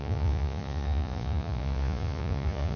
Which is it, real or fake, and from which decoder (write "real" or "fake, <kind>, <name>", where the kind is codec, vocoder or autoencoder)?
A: fake, vocoder, Vocos